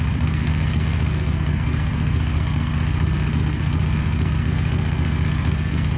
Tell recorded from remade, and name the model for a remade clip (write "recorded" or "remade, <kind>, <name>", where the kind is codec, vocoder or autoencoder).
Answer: remade, codec, SNAC